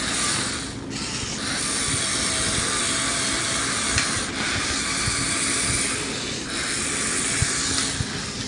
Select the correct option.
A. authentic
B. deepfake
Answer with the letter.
A